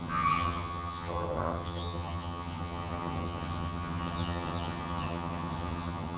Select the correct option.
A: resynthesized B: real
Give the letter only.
A